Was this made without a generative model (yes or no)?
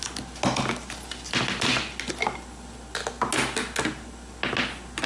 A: yes